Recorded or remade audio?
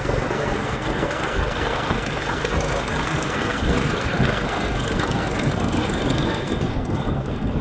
remade